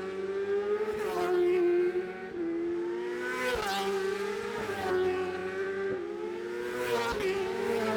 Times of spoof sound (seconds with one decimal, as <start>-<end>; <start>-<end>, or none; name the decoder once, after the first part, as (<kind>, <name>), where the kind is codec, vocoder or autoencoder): none